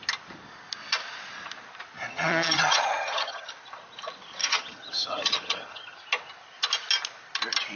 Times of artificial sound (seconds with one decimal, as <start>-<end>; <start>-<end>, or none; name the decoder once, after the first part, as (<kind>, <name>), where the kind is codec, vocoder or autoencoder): 2.1-3.5 (vocoder, HiFi-GAN); 4.4-6.0